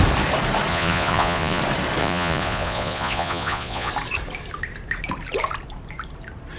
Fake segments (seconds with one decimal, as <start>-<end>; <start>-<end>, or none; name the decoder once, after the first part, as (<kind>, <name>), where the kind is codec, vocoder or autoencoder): 0.7-1.6 (vocoder, Vocos); 2.0-3.9